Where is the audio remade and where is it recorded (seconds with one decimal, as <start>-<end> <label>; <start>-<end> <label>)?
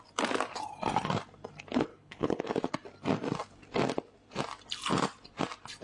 0.0-1.9 recorded; 1.9-2.4 remade; 2.4-5.8 recorded